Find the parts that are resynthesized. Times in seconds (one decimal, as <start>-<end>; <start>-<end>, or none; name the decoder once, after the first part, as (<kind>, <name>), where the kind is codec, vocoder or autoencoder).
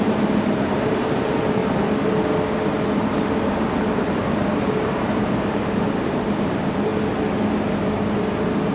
0.0-1.6 (vocoder, BigVGAN v2); 2.5-6.9; 7.7-8.7